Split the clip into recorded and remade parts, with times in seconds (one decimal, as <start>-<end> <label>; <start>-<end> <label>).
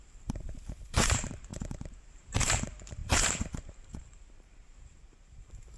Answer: 0.0-5.8 remade